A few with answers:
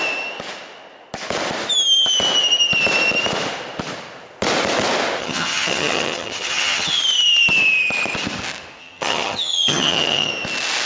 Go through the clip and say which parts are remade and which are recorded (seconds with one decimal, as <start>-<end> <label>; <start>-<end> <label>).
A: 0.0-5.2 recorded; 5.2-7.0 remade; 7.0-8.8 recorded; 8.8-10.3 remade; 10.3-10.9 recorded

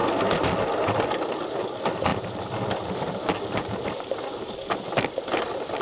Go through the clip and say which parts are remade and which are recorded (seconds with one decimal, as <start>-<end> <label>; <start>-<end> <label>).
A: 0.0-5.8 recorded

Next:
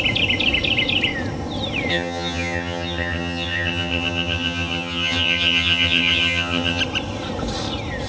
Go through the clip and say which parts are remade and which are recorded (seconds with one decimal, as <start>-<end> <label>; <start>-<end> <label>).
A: 0.0-1.9 recorded; 1.9-6.8 remade; 6.8-8.1 recorded